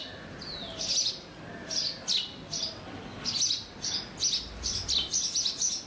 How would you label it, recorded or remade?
recorded